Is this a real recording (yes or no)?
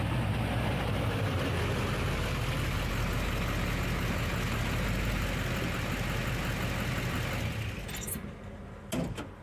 yes